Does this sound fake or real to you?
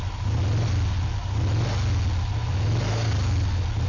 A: real